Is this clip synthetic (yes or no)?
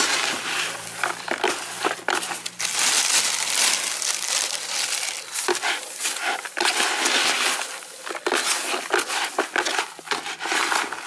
no